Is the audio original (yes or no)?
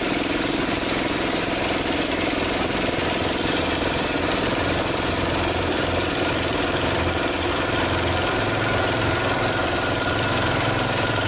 no